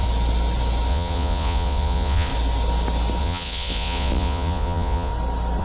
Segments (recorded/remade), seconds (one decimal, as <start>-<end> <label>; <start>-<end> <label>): 0.0-0.9 recorded; 0.9-2.3 remade; 2.3-3.2 recorded; 3.2-5.1 remade; 5.1-5.6 recorded